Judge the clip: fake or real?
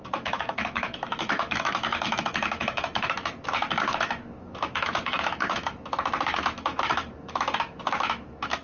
fake